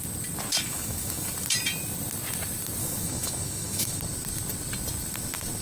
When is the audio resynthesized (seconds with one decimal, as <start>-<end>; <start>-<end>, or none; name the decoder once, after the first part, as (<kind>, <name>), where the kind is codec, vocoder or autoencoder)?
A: 0.5-1.3 (autoencoder, DAC-VAE); 2.8-4.0